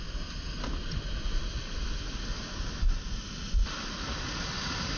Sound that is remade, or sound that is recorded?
recorded